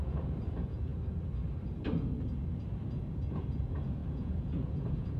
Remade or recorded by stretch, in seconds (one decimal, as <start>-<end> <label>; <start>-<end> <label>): 0.0-0.9 remade; 0.9-3.3 recorded; 3.3-5.2 remade